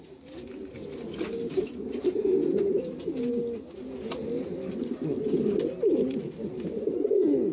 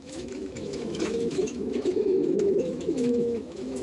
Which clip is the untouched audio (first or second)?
first